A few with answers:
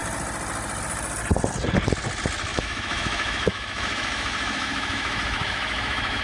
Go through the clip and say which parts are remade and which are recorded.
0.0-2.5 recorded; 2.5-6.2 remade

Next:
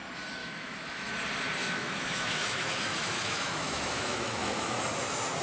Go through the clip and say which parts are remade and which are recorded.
0.0-0.4 recorded; 0.4-1.1 remade; 1.1-1.6 recorded; 1.6-4.8 remade; 4.8-5.4 recorded